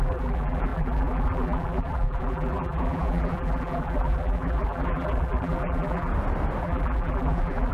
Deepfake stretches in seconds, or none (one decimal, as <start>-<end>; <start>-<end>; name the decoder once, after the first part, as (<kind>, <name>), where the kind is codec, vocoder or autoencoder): 0.0-6.1 (vocoder, BigVGAN v2); 6.6-7.7